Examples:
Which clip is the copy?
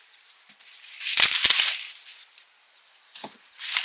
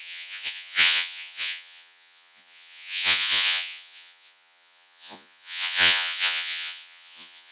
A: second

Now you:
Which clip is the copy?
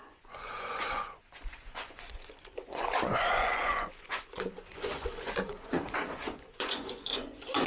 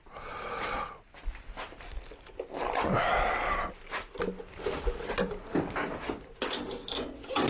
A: first